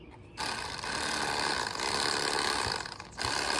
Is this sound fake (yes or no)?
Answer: no